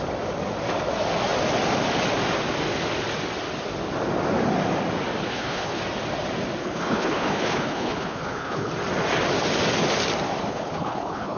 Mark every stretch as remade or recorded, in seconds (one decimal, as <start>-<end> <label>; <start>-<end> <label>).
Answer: 0.0-5.2 recorded; 5.2-5.8 remade; 5.8-6.6 recorded; 6.6-8.7 remade; 8.7-10.5 recorded; 10.5-11.4 remade